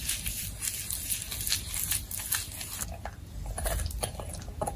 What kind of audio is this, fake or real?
real